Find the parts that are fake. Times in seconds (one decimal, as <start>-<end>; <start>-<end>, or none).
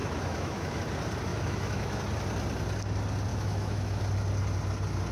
0.0-0.8; 1.3-2.0; 3.3-4.0